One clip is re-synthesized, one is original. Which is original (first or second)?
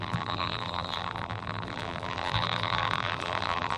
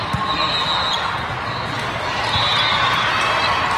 second